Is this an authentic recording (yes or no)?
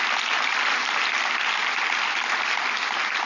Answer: yes